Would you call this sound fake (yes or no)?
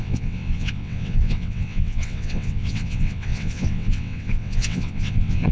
yes